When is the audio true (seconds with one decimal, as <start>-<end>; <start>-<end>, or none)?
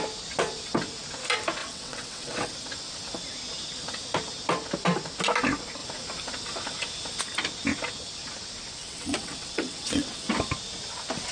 0.0-1.6; 2.5-8.8; 10.3-11.3